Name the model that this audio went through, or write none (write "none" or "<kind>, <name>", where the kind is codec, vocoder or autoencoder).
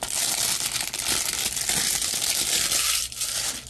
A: none